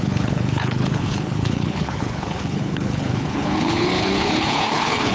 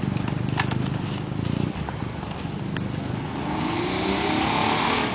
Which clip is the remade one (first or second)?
first